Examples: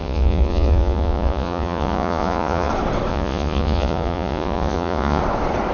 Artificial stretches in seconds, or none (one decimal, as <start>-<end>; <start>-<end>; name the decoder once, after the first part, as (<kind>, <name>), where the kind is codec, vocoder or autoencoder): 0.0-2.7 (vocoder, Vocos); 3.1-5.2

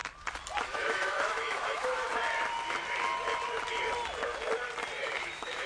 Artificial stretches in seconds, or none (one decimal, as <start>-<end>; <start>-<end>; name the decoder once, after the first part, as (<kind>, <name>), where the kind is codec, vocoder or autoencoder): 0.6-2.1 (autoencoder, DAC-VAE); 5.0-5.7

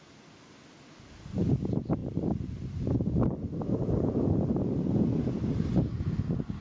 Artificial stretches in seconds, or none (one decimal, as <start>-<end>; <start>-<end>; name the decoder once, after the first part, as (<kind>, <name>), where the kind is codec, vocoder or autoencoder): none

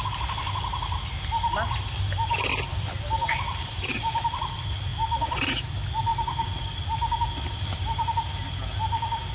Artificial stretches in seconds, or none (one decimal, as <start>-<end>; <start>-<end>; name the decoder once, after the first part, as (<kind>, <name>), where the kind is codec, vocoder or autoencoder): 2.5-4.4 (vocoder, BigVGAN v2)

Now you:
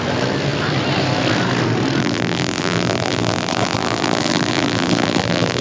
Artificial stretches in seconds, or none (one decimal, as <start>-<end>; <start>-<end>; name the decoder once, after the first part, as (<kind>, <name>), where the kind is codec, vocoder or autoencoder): 2.0-5.6 (vocoder, BigVGAN v2)